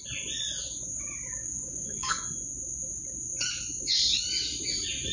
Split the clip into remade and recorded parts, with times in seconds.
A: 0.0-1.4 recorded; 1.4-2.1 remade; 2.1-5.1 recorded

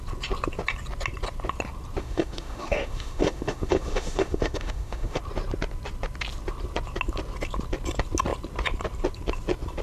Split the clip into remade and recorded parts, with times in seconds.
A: 0.0-2.0 recorded; 2.0-5.2 remade; 5.2-9.8 recorded

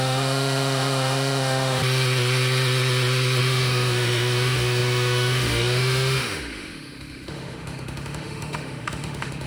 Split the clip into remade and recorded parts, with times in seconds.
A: 0.0-1.8 remade; 1.8-3.4 recorded; 3.4-9.5 remade